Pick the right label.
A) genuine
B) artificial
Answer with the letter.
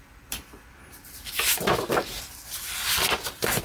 B